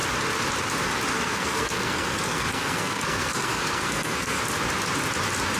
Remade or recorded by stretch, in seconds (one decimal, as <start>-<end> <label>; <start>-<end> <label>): 0.0-1.1 recorded; 1.1-4.4 remade; 4.4-5.6 recorded